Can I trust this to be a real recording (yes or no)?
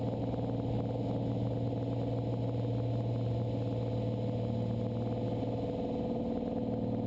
yes